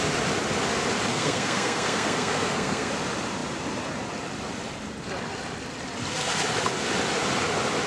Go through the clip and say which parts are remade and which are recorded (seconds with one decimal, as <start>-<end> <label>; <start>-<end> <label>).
0.0-1.1 recorded; 1.1-2.9 remade; 2.9-7.9 recorded